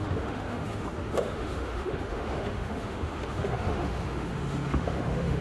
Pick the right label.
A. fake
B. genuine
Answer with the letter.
A